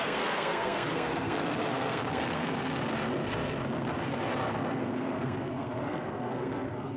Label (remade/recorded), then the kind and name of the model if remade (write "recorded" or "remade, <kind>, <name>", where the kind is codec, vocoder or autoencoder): remade, codec, SNAC